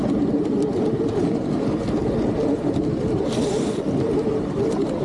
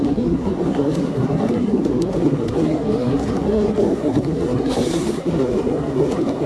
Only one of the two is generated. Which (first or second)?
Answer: second